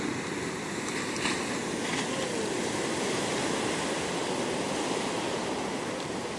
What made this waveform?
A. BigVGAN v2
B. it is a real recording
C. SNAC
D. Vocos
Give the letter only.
B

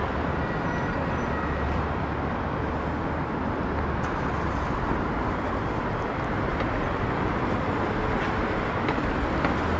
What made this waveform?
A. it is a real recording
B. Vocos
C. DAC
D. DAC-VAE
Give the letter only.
A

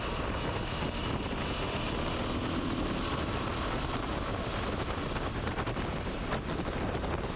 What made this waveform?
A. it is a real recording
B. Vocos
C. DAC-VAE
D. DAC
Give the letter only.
A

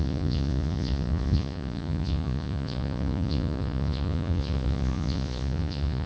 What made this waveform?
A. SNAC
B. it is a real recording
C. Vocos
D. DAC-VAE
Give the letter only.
C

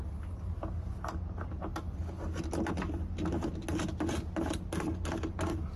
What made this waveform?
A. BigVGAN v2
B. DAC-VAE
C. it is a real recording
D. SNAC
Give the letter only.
C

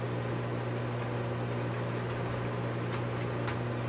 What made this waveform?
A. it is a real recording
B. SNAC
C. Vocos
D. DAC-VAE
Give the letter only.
A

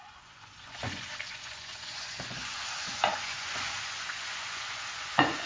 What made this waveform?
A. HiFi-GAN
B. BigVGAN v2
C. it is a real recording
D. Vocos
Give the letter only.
D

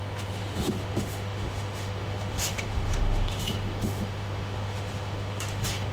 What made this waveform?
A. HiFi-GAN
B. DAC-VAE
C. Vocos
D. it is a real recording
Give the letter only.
B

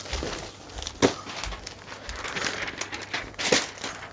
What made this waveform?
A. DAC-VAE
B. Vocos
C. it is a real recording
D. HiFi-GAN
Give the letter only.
C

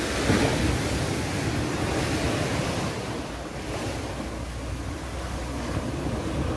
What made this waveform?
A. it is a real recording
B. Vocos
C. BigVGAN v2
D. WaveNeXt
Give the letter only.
A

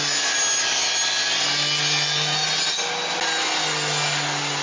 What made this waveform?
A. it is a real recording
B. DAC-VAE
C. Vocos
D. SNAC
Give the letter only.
A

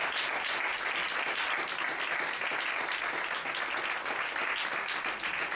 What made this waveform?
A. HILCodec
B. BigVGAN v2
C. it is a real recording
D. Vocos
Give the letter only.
C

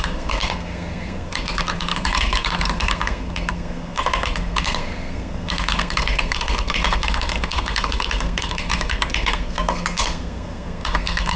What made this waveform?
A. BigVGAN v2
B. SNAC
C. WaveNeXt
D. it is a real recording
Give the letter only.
B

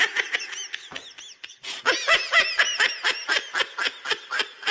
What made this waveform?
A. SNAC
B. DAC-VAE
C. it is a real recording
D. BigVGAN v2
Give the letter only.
C